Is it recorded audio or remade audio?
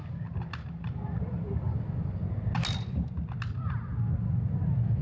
recorded